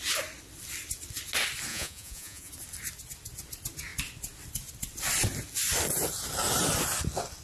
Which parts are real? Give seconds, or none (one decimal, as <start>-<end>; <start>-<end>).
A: 0.0-1.7; 2.5-7.4